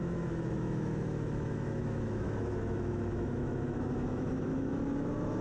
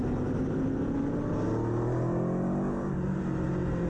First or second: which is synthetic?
first